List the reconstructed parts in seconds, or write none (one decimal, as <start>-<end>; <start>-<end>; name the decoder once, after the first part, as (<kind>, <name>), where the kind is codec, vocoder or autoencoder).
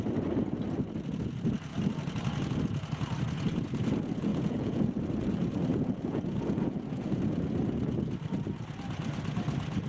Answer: 4.3-4.9 (vocoder, Vocos); 5.7-7.2